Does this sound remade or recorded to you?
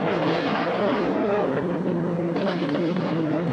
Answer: remade